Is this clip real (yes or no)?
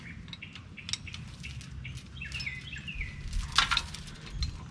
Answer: yes